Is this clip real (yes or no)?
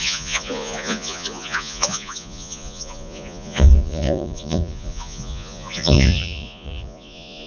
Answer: no